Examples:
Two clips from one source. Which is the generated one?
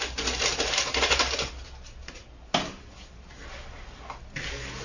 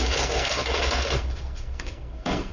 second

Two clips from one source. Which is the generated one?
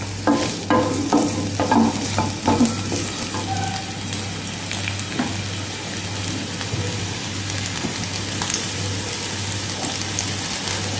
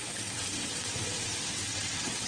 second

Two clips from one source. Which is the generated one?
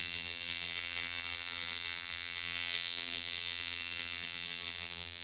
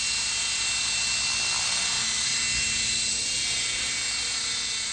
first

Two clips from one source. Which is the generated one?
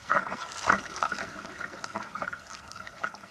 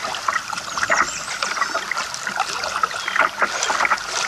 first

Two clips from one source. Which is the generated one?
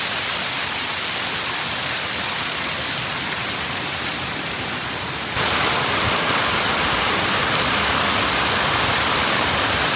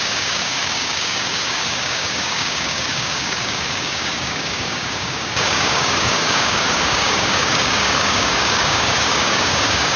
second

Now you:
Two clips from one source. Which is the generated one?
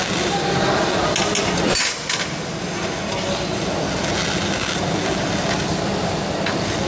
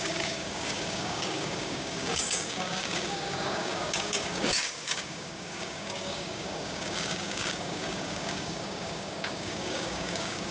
second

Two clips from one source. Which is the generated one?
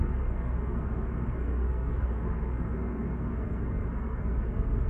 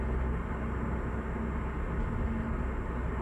first